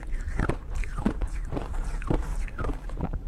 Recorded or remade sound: remade